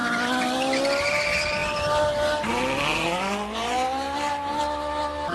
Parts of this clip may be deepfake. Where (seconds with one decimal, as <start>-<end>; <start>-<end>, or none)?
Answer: 2.9-4.6